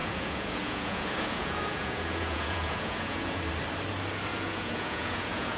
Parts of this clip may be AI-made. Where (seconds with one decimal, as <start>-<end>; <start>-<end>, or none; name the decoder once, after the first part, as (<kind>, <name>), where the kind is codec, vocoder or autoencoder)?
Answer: 0.0-3.4 (vocoder, Vocos); 4.3-5.6